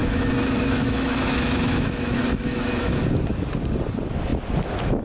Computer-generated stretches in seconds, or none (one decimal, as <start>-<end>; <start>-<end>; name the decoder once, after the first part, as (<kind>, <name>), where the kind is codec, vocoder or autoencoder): 0.0-3.0 (autoencoder, DAC-VAE)